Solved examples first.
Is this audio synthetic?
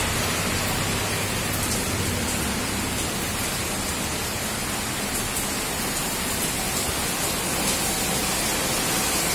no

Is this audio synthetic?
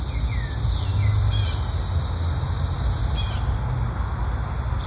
no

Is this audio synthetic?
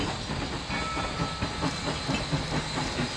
no